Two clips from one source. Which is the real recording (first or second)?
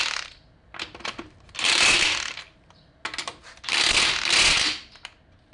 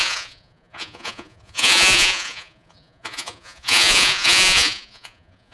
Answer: first